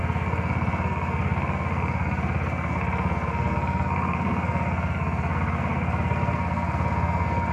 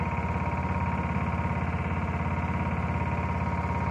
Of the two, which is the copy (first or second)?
first